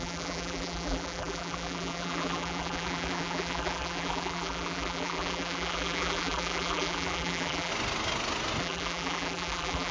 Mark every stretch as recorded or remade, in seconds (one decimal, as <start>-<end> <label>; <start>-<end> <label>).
0.0-7.7 remade; 7.7-8.6 recorded; 8.6-9.9 remade